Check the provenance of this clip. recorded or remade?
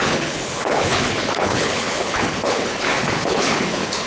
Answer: remade